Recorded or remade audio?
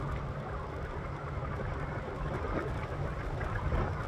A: recorded